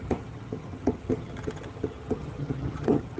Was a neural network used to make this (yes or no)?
yes